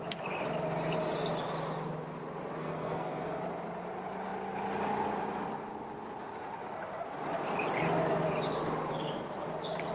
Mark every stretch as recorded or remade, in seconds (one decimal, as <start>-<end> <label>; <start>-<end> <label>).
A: 0.0-2.6 recorded; 2.6-3.4 remade; 3.4-9.9 recorded